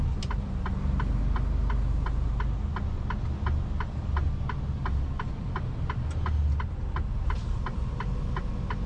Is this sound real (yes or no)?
yes